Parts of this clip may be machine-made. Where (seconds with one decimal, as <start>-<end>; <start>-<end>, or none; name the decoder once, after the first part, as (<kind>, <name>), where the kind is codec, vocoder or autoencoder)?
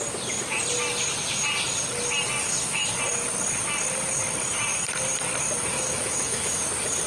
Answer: 2.4-3.0 (autoencoder, DAC-VAE); 5.7-6.6